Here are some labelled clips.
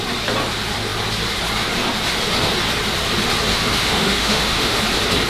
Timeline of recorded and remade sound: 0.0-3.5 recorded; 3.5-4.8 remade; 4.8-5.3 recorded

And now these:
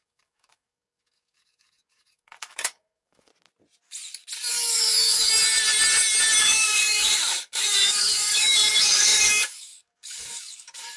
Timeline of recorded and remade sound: 0.0-3.3 remade; 3.3-4.5 recorded; 4.5-5.3 remade; 5.3-6.4 recorded; 6.4-11.0 remade

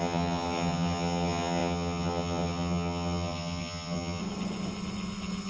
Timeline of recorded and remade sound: 0.0-4.2 remade; 4.2-5.5 recorded